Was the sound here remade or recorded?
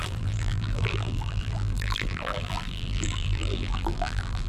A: remade